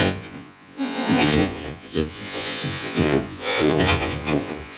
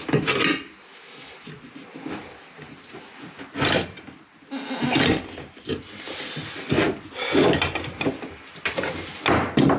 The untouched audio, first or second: second